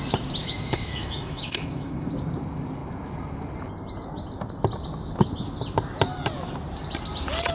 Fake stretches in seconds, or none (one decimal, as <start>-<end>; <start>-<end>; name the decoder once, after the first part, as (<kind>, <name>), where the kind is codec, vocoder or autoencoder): 0.4-2.1 (autoencoder, DAC-VAE)